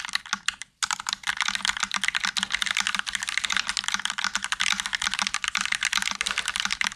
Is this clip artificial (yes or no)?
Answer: no